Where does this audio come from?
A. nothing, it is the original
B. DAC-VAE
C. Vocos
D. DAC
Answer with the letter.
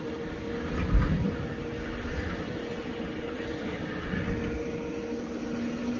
A